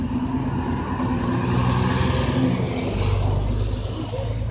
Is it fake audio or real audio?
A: real